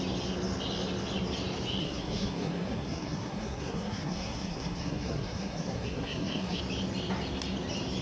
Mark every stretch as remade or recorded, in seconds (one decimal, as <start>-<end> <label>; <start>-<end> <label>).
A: 0.0-1.8 recorded; 1.8-6.6 remade; 6.6-8.0 recorded